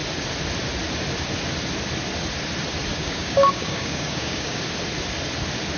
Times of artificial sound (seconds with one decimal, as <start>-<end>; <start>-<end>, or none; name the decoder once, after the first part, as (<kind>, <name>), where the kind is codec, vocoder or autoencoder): 2.9-4.6 (codec, DAC)